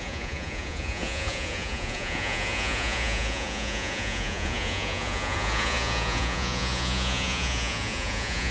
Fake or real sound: fake